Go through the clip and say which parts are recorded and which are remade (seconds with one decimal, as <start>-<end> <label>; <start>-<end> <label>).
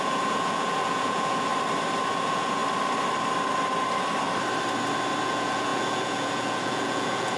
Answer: 0.0-1.5 remade; 1.5-2.1 recorded; 2.1-2.6 remade; 2.6-5.2 recorded; 5.2-7.4 remade